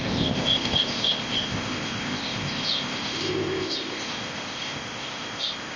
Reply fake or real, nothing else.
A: fake